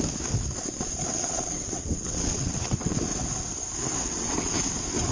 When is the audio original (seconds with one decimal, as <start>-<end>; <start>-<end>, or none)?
0.0-1.1; 2.9-4.0; 4.6-5.1